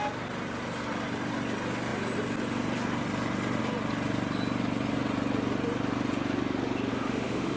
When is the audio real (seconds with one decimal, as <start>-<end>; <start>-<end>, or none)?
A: 0.0-6.9